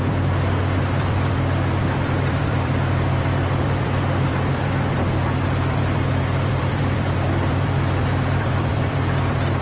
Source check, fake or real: fake